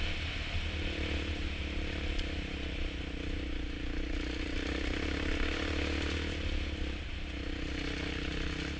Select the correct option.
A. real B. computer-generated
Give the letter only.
A